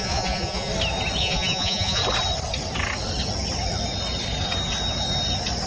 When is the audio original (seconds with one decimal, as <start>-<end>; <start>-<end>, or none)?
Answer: 0.7-1.2; 2.0-5.7